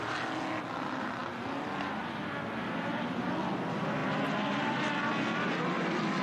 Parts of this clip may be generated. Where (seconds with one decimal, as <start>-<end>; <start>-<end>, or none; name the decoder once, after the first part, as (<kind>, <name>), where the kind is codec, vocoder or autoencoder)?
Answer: none